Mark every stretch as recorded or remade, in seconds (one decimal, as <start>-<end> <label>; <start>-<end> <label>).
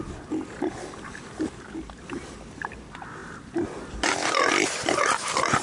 0.0-5.6 recorded